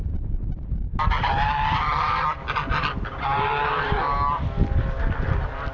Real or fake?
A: real